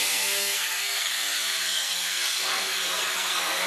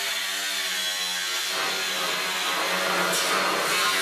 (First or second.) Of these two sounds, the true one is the second